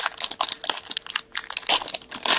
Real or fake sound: real